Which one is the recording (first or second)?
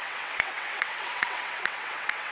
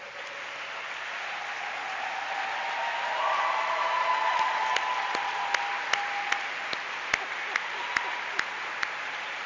second